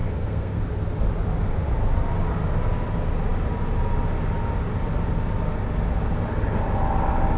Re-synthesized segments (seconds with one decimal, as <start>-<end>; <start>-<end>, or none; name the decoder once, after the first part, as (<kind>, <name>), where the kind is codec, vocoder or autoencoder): 0.0-0.6 (codec, SNAC)